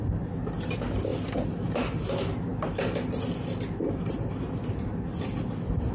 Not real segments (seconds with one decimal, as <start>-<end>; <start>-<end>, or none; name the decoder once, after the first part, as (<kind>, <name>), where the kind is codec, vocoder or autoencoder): 1.1-2.0 (vocoder, BigVGAN v2); 2.5-5.5